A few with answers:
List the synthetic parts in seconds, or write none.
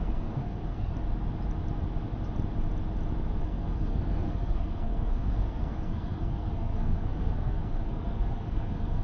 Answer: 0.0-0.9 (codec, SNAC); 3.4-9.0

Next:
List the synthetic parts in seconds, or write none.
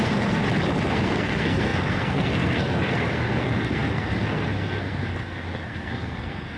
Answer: 0.0-0.4 (codec, SNAC); 0.9-6.6